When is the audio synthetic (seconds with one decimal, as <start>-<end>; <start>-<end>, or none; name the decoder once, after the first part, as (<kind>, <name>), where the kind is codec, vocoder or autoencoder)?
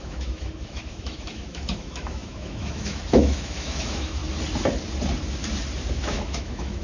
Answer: 0.0-4.2 (autoencoder, DAC-VAE); 5.9-6.8